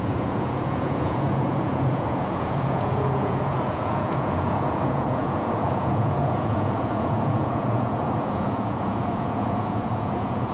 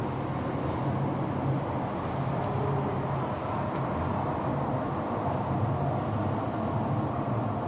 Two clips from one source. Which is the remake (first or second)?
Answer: first